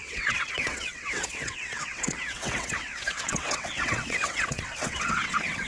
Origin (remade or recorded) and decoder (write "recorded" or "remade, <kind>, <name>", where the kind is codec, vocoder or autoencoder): remade, vocoder, WaveNeXt